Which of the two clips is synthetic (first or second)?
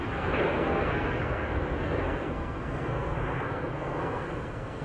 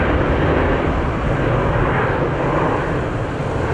first